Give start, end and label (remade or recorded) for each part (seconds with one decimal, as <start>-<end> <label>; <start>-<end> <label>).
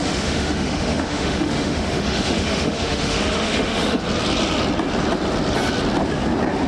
0.0-4.0 remade; 4.0-6.7 recorded